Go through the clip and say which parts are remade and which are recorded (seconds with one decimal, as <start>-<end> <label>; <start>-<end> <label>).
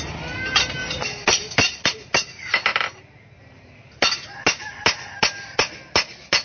0.0-6.4 recorded